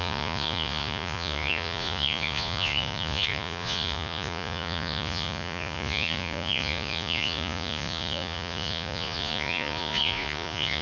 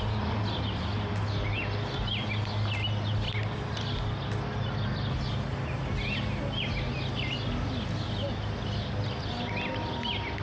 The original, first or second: second